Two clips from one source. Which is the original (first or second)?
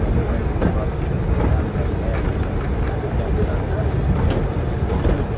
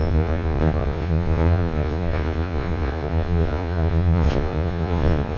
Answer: first